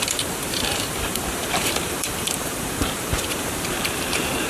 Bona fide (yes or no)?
no